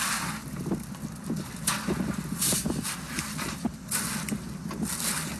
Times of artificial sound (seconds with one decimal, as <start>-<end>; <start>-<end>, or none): none

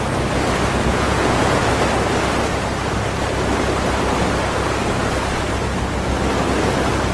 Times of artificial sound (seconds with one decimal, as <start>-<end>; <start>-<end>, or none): 0.9-1.6

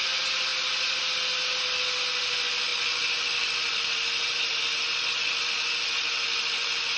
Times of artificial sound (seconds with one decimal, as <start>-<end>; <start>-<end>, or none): 2.7-4.6

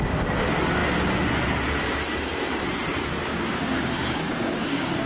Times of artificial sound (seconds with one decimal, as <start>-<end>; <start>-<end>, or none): 3.3-5.1